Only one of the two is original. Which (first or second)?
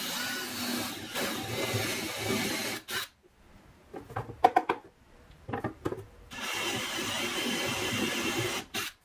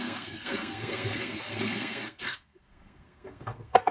first